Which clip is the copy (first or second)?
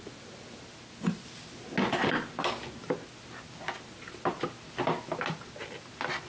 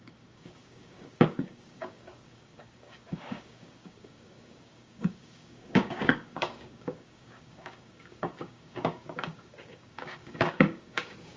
second